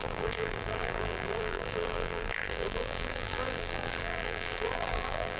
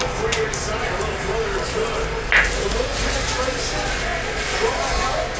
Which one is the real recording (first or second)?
second